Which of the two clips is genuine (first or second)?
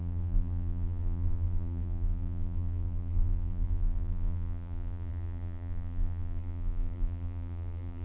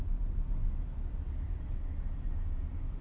second